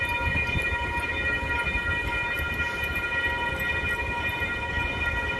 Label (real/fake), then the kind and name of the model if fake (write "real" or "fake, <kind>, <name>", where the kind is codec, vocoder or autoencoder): real